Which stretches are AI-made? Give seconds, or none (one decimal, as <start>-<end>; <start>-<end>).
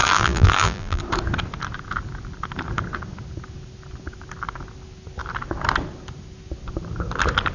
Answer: 0.0-1.0